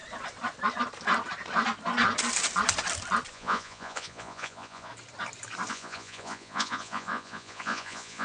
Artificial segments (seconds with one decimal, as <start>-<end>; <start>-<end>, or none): 3.3-4.9; 5.7-8.2